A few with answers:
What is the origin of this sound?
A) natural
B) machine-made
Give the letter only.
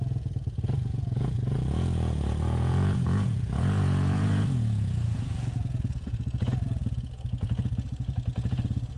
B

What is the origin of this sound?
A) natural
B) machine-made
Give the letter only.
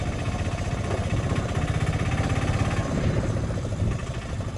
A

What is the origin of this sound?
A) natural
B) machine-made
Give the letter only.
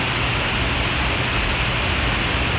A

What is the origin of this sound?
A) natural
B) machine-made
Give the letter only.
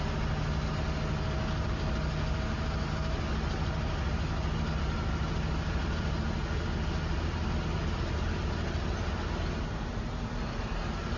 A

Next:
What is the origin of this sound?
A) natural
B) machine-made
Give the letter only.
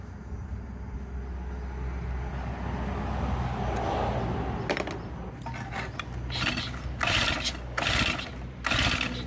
A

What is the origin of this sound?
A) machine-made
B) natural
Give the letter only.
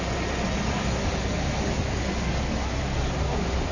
B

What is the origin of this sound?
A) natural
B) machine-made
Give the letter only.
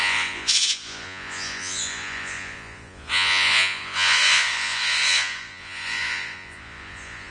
B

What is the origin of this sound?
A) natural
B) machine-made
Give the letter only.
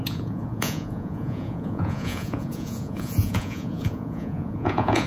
B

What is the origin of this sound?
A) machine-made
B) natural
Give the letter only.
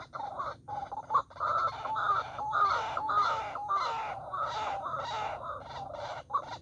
B